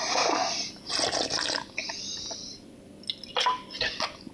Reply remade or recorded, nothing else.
recorded